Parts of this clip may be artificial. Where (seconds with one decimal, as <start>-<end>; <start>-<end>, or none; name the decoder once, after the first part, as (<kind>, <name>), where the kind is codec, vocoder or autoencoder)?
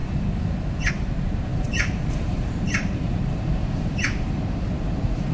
0.9-5.3 (vocoder, BigVGAN v2)